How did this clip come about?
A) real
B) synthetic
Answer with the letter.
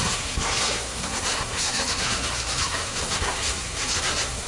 B